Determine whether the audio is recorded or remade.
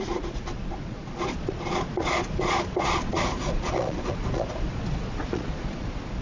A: remade